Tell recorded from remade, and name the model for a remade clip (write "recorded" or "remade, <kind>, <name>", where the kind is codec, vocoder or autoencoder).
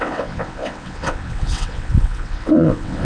remade, vocoder, WaveNeXt